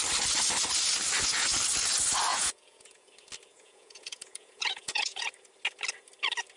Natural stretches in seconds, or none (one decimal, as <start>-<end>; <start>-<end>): 0.0-2.3; 3.1-3.5; 5.3-6.6

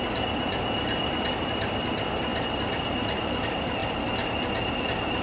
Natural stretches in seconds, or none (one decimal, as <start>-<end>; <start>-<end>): 0.0-5.2

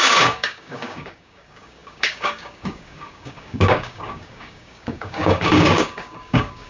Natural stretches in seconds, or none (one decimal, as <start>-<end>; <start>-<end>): none

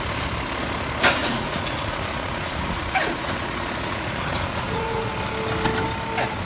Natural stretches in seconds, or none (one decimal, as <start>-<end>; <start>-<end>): 0.0-1.2; 5.1-6.5